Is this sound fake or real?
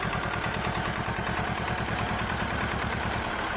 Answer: fake